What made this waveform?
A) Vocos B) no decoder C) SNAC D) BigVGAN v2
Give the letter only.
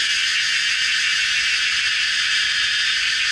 B